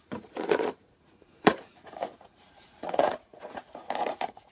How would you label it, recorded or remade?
remade